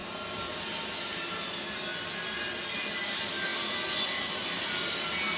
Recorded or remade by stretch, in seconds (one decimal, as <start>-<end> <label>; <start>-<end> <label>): 0.0-5.4 recorded